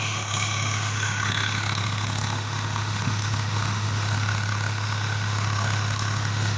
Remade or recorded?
remade